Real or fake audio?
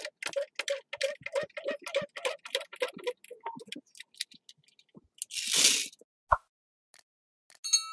real